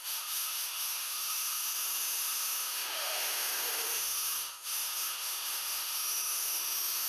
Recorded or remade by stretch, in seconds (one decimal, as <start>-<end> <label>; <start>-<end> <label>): 0.0-7.1 remade